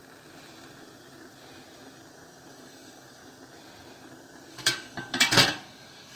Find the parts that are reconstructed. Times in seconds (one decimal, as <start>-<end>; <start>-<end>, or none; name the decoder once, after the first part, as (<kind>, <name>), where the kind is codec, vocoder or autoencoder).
2.5-3.2 (codec, DAC); 4.5-6.2

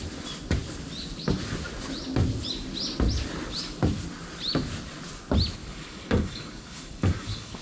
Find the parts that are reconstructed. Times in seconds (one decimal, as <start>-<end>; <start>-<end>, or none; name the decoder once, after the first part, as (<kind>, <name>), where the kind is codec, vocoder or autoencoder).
5.6-7.6 (codec, DAC)